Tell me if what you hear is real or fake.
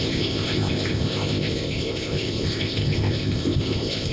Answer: fake